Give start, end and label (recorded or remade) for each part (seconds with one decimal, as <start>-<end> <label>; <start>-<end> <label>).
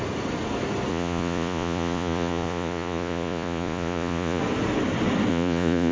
0.0-0.9 recorded; 0.9-4.4 remade; 4.4-5.3 recorded; 5.3-5.9 remade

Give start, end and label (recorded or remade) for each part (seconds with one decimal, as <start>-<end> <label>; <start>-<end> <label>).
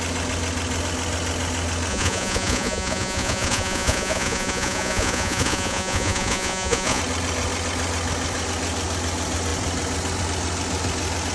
0.0-1.9 recorded; 1.9-7.0 remade; 7.0-11.3 recorded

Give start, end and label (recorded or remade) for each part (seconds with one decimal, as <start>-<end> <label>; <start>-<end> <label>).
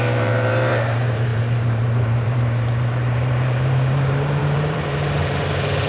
0.0-5.9 remade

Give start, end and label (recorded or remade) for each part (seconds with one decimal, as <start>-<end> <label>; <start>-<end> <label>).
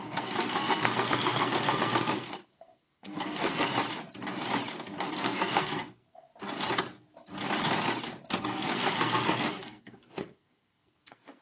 0.0-3.7 remade; 3.7-5.0 recorded; 5.0-6.3 remade; 6.3-8.4 recorded; 8.4-11.4 remade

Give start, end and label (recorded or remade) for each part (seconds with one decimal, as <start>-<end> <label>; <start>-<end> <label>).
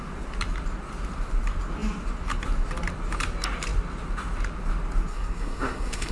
0.0-5.1 recorded; 5.1-6.1 remade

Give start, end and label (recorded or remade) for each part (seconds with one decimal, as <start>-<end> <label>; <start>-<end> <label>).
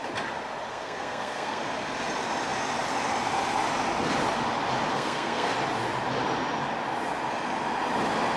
0.0-0.7 recorded; 0.7-1.6 remade; 1.6-4.9 recorded; 4.9-5.5 remade; 5.5-8.4 recorded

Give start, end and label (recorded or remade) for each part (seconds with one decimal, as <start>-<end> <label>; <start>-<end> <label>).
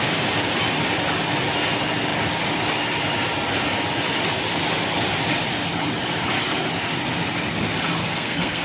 0.0-8.0 recorded; 8.0-8.6 remade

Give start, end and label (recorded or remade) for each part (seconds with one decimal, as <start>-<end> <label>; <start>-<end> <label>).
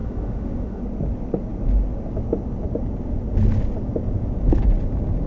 0.0-0.8 remade; 0.8-5.3 recorded